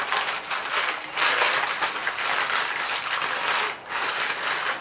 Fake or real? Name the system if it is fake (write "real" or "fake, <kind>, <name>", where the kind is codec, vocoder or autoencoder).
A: real